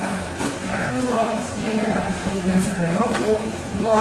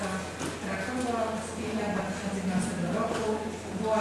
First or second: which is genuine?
second